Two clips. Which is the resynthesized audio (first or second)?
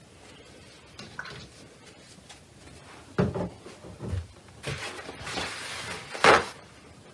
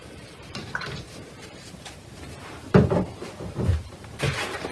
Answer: second